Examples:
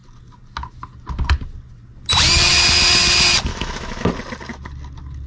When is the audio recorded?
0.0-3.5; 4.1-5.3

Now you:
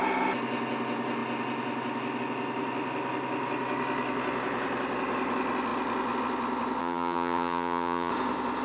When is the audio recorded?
0.0-6.8; 8.1-8.6

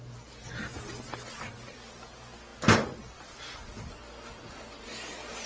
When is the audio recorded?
0.0-5.5

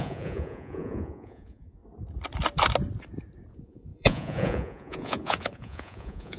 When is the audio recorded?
1.8-3.5

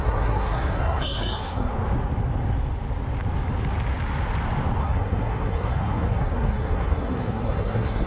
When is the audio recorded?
1.7-4.8

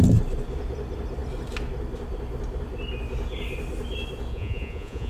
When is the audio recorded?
0.0-4.3

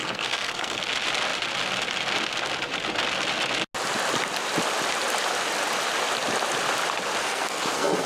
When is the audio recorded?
0.8-7.2

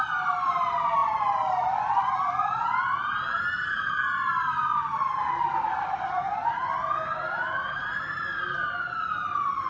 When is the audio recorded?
0.0-9.7